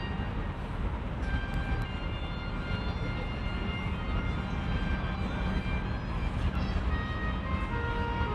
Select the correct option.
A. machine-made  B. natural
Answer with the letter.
B